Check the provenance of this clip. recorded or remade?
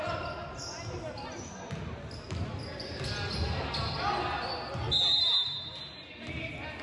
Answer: recorded